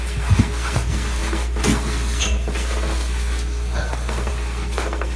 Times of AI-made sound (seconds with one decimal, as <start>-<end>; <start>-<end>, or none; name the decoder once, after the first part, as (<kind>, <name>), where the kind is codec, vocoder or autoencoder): 0.0-5.2 (codec, SNAC)